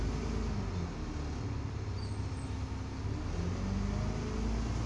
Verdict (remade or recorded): recorded